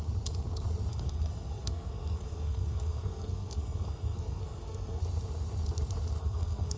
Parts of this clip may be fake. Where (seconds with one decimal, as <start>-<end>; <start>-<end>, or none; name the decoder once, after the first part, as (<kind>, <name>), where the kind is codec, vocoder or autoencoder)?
0.9-5.0 (codec, SNAC); 6.2-6.8